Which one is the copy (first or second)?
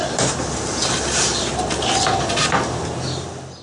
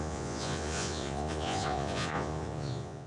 second